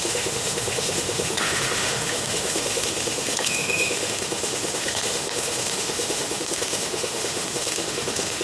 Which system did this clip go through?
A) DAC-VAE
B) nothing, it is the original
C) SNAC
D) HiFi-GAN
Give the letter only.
A